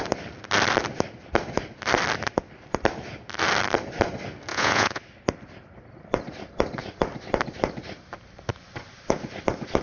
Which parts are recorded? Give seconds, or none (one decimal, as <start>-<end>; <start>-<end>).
0.0-4.5; 5.0-9.8

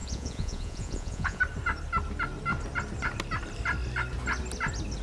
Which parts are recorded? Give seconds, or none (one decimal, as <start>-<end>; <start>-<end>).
1.4-5.0

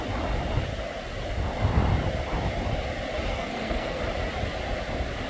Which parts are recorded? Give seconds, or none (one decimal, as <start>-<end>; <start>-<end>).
0.0-3.3; 4.0-5.3

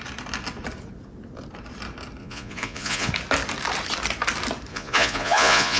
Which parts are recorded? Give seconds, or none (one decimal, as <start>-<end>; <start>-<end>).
0.0-2.2; 3.1-4.7